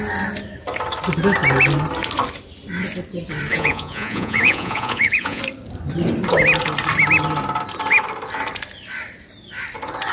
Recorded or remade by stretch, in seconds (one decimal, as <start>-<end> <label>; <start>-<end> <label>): 0.0-3.5 recorded; 3.5-5.4 remade; 5.4-10.1 recorded